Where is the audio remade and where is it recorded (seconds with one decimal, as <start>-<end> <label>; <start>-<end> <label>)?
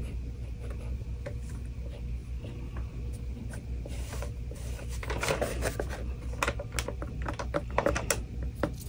0.0-8.9 recorded